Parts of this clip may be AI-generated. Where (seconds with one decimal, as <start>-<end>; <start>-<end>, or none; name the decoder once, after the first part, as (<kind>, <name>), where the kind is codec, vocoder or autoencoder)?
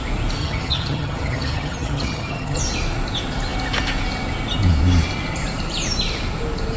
0.4-2.6 (vocoder, HiFi-GAN)